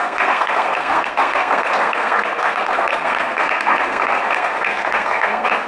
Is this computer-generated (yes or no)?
yes